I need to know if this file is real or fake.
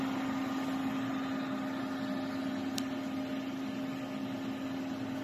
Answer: real